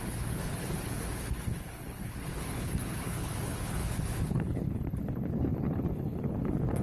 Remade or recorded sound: remade